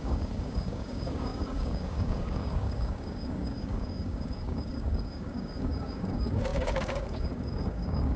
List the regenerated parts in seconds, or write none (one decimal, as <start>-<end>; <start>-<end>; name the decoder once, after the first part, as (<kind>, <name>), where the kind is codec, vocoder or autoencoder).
0.0-8.2 (codec, DAC)